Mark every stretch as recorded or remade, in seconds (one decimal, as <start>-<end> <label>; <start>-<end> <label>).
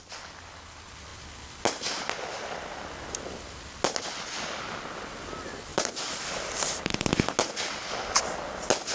0.0-5.7 recorded; 5.7-7.1 remade; 7.1-8.9 recorded